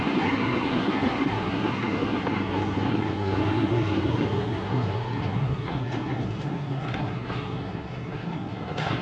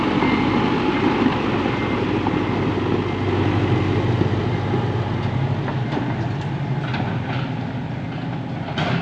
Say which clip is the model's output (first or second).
first